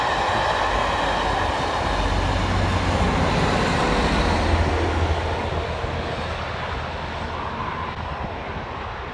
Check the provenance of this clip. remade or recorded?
recorded